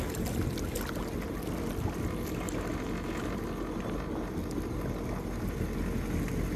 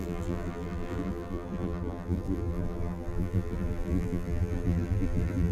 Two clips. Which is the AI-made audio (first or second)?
second